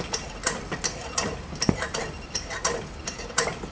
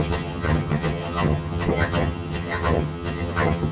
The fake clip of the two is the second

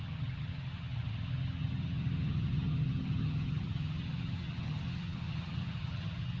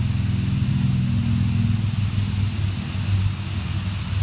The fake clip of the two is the first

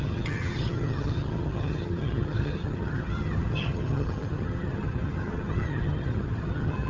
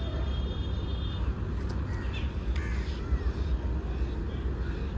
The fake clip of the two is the first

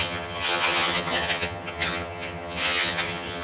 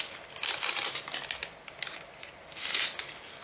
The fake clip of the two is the first